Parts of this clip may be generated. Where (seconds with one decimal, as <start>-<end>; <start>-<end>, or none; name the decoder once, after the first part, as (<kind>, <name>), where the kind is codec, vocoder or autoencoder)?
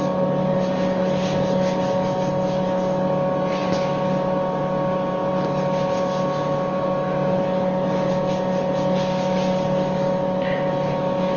none